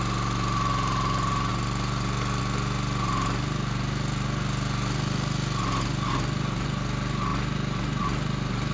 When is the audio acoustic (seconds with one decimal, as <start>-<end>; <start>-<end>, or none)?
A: 0.0-8.7